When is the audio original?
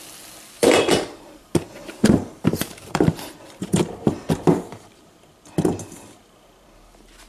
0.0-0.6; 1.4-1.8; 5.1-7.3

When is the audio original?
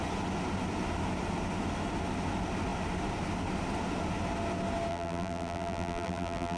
0.0-4.9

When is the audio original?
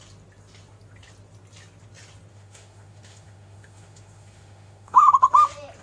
0.0-2.3; 5.1-5.8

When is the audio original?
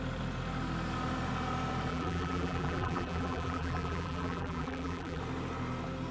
0.0-1.9; 5.2-6.1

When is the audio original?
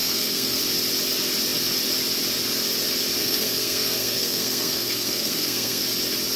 0.6-3.2; 5.8-6.4